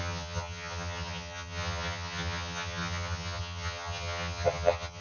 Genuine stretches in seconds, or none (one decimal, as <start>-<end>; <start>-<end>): none